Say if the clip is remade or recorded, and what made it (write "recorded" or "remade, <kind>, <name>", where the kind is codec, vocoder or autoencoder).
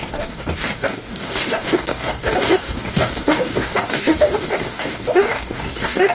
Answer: remade, codec, DAC